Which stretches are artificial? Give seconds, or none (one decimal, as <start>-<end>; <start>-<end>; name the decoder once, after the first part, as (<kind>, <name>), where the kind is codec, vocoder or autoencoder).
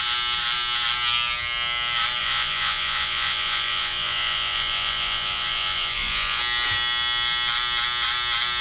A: 2.2-6.4 (vocoder, Vocos)